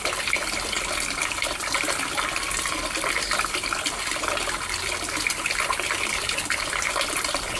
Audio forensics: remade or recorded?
recorded